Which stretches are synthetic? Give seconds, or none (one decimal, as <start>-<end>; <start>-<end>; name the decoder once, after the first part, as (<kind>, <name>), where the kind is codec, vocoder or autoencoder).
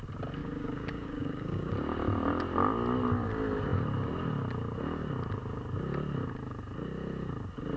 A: 0.4-1.7 (codec, DAC)